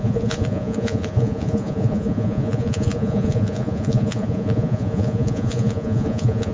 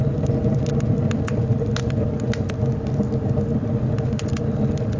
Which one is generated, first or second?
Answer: first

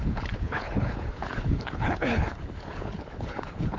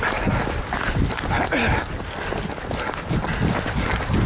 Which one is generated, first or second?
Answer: first